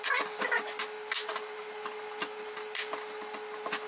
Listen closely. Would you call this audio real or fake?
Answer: real